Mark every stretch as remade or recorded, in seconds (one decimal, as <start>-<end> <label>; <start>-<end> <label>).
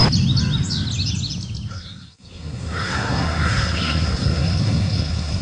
0.0-1.7 recorded; 1.7-5.4 remade